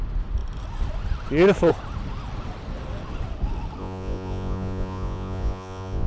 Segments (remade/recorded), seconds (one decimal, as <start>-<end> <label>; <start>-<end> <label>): 0.0-3.8 recorded; 3.8-6.1 remade